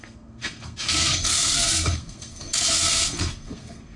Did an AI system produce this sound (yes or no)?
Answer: yes